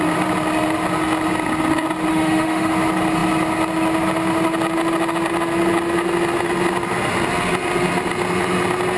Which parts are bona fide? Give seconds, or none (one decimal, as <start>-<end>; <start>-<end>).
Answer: 0.0-2.1; 2.7-9.0